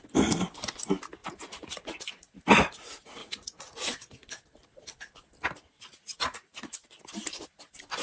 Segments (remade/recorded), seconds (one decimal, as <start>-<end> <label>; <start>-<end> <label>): 0.0-1.2 recorded; 1.2-2.4 remade; 2.4-3.2 recorded; 3.2-3.9 remade; 3.9-5.9 recorded; 5.9-6.6 remade; 6.6-8.0 recorded